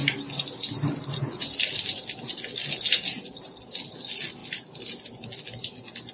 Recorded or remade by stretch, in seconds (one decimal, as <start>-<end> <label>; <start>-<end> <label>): 0.0-6.1 recorded